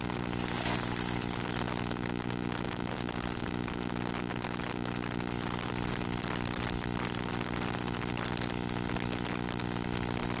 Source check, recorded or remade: recorded